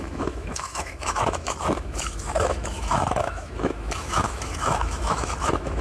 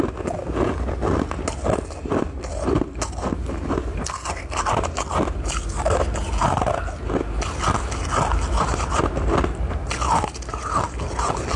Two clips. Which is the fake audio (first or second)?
first